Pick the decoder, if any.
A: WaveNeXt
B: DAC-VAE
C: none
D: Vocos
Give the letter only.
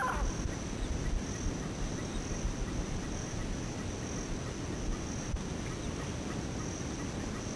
C